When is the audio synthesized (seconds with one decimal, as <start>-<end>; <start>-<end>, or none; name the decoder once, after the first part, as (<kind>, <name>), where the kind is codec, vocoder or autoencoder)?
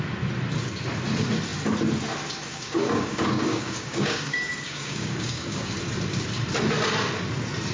2.5-5.7 (codec, DAC)